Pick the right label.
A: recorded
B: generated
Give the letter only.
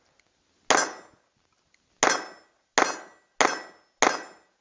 A